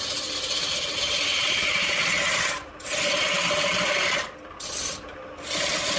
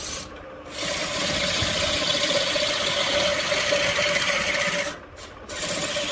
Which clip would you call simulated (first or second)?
second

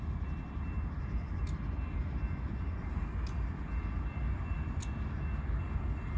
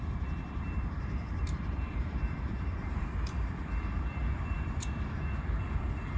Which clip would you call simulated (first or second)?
second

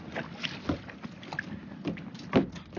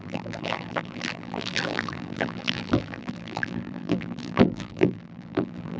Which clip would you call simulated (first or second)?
second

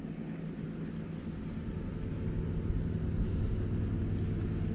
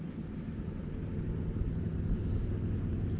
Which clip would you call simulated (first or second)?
second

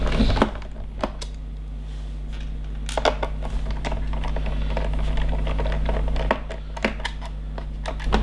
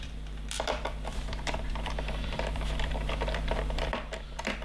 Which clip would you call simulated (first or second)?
second